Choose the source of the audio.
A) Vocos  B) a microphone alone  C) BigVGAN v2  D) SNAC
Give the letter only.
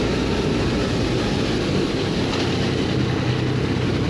B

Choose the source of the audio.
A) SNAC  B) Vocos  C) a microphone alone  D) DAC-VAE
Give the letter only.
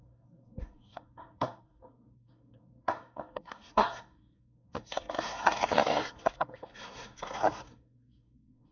A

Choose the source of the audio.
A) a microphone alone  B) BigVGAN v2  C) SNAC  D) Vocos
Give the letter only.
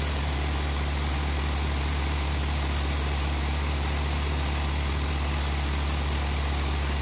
A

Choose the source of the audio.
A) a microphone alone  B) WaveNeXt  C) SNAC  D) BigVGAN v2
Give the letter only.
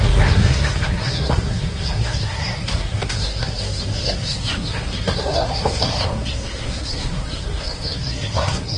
C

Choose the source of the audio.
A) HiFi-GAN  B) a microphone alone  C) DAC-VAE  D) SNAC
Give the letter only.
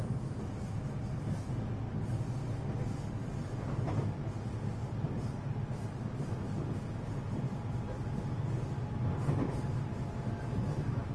B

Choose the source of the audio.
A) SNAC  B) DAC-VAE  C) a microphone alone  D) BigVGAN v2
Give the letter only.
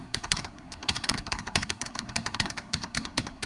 A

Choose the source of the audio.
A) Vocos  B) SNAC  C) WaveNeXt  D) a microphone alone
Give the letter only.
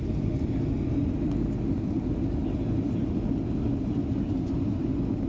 D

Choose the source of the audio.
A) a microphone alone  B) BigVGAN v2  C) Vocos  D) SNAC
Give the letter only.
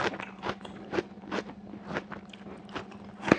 A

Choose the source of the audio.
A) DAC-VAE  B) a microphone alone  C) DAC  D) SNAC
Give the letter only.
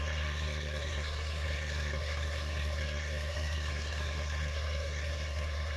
D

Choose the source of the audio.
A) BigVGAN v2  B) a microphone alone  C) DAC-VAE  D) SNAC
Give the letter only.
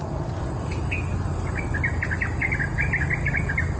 B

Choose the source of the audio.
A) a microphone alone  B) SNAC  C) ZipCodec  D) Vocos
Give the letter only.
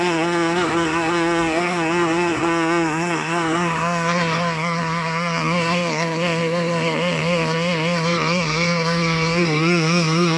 B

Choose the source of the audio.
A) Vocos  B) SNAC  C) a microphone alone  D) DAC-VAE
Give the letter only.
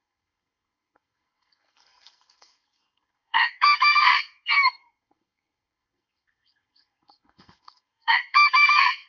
B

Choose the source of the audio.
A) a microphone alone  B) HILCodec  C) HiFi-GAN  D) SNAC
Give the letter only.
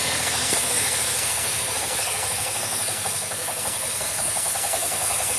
D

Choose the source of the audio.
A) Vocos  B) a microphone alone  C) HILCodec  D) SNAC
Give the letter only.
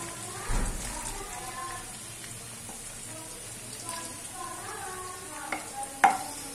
B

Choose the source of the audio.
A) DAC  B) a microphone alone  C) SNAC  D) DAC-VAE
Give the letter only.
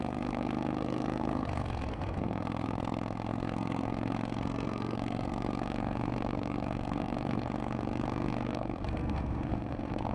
C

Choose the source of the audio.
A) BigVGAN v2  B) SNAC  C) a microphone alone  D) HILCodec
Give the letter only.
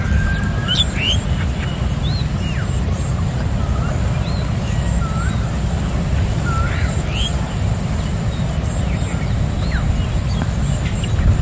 C